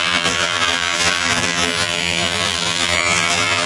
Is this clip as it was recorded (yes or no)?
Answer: no